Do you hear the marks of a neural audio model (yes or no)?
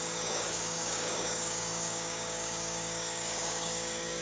yes